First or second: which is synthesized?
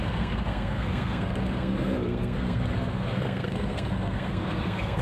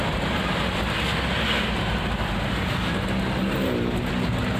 first